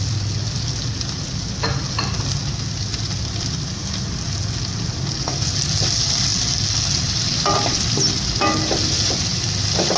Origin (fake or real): real